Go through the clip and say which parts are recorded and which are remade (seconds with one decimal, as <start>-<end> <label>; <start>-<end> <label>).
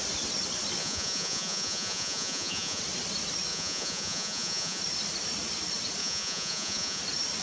0.0-0.8 recorded; 0.8-2.8 remade; 2.8-3.5 recorded; 3.5-4.8 remade; 4.8-6.0 recorded; 6.0-7.0 remade; 7.0-7.4 recorded